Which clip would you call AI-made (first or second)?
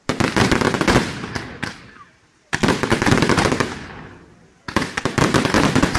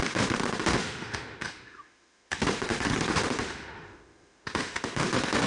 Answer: second